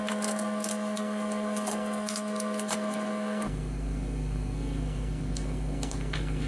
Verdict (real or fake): fake